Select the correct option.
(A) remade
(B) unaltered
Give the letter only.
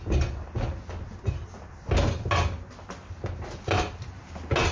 B